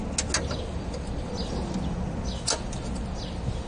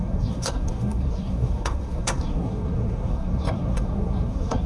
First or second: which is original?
first